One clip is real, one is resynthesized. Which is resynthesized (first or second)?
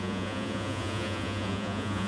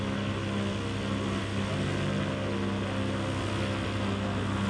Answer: first